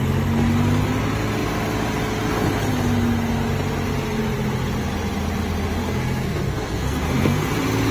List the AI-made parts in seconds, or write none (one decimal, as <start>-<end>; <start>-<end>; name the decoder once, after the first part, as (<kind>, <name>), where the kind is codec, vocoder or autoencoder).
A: 5.8-7.5 (codec, SNAC)